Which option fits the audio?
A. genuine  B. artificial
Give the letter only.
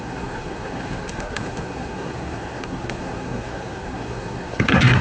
B